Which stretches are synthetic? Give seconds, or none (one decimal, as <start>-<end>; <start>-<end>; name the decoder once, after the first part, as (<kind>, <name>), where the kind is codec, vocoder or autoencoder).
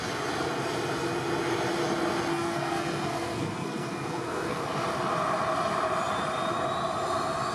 2.3-4.6 (codec, SNAC)